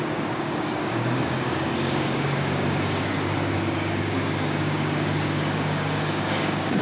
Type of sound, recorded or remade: remade